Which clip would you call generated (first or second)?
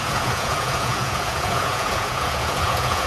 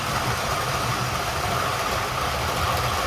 first